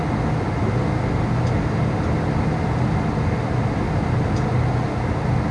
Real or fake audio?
real